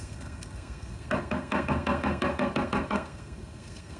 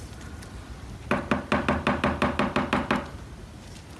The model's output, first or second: first